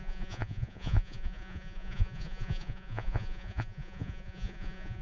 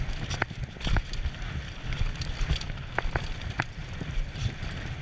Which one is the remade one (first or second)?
first